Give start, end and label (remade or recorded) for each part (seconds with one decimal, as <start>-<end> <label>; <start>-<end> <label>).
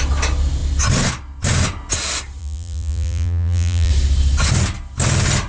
0.0-2.4 recorded; 2.4-3.9 remade; 3.9-5.5 recorded